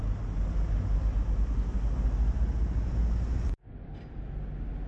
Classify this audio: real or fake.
real